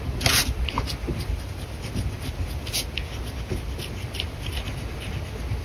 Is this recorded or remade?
recorded